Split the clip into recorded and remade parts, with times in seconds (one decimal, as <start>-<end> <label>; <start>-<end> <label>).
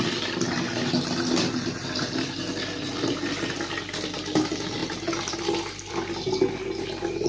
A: 0.0-7.3 recorded